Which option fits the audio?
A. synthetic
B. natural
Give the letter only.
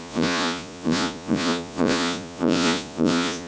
A